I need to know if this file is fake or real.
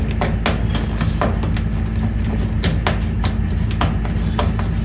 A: real